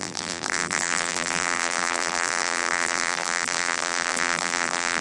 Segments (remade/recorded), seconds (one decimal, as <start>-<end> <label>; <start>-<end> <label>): 0.0-5.0 remade